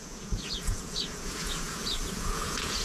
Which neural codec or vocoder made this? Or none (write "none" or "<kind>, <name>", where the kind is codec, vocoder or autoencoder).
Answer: vocoder, Vocos